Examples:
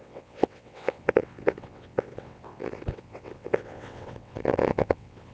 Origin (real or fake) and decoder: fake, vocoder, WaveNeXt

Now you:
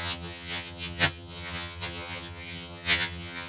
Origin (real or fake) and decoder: fake, vocoder, HiFi-GAN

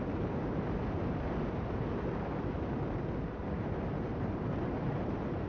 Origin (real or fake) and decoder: fake, vocoder, BigVGAN v2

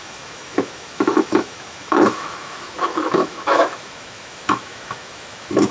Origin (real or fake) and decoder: fake, autoencoder, DAC-VAE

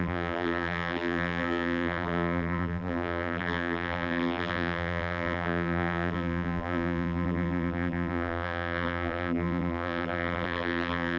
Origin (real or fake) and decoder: fake, vocoder, BigVGAN v2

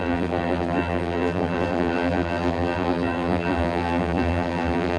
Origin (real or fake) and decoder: fake, vocoder, BigVGAN v2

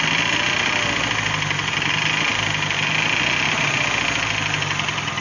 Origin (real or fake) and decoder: real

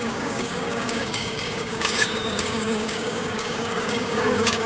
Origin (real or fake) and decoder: fake, codec, DAC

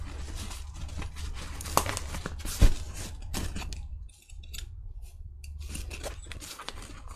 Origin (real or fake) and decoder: real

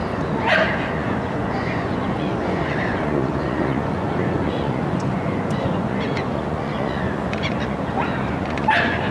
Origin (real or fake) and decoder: fake, vocoder, Vocos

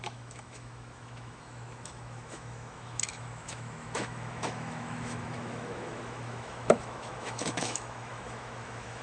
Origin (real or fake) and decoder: fake, autoencoder, DAC-VAE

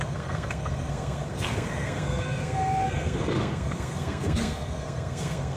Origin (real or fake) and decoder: fake, codec, SNAC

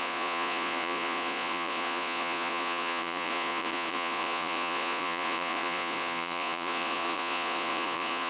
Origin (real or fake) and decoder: fake, vocoder, Vocos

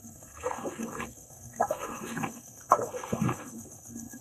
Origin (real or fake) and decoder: fake, codec, SNAC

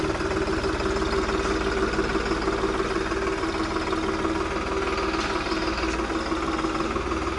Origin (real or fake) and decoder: real